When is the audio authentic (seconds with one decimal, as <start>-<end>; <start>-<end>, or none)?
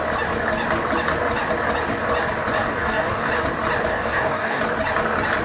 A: 0.0-2.6; 3.3-3.9; 4.6-5.4